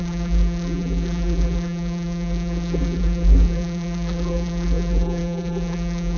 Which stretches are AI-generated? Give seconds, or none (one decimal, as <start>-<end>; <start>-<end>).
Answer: 0.0-6.2